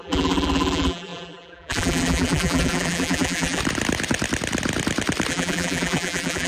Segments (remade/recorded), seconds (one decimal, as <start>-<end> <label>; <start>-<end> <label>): 0.0-3.6 remade; 3.6-5.3 recorded; 5.3-6.5 remade